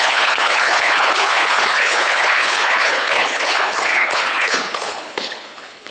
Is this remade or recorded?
remade